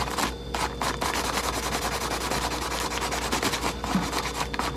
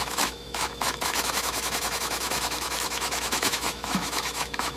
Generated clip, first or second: second